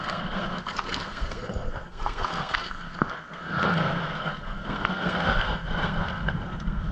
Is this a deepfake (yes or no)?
yes